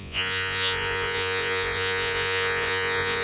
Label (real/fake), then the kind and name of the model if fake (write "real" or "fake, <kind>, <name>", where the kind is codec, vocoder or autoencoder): fake, vocoder, Vocos